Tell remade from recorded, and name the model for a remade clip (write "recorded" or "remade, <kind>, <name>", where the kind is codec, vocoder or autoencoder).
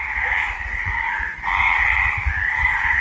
remade, vocoder, BigVGAN v2